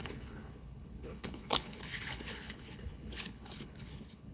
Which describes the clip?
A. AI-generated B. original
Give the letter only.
A